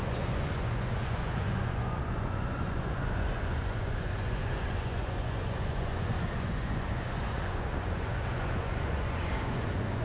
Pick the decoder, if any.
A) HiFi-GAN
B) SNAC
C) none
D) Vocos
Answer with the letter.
D